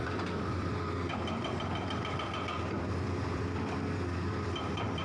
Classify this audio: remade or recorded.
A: remade